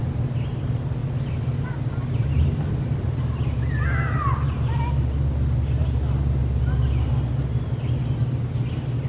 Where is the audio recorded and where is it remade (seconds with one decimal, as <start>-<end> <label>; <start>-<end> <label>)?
0.0-9.1 recorded

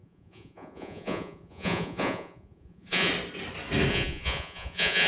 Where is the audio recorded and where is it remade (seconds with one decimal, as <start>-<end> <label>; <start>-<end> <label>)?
0.0-3.1 remade; 3.1-3.9 recorded; 3.9-5.1 remade

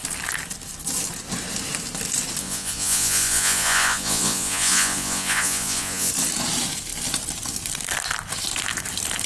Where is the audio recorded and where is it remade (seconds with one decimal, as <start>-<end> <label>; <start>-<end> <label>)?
0.0-2.4 recorded; 2.4-6.1 remade; 6.1-9.3 recorded

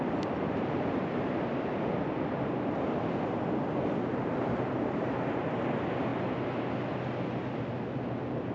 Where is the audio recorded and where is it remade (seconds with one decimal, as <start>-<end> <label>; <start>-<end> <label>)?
0.0-8.5 recorded

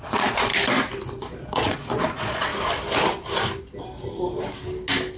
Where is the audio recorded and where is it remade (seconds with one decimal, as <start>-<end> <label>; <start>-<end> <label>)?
0.0-0.5 remade; 0.5-1.1 recorded; 1.1-2.5 remade; 2.5-5.2 recorded

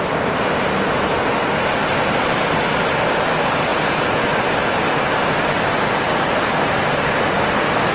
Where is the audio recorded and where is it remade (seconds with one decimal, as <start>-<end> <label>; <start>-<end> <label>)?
0.0-3.7 recorded; 3.7-4.3 remade; 4.3-7.9 recorded

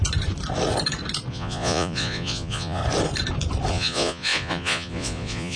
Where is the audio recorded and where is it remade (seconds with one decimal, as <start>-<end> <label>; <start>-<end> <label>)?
0.0-1.3 recorded; 1.3-2.8 remade; 2.8-3.7 recorded; 3.7-5.6 remade